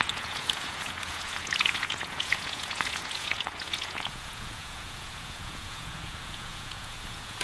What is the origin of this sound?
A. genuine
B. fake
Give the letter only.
B